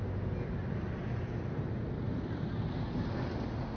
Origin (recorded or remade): recorded